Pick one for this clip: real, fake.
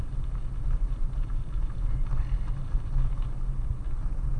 real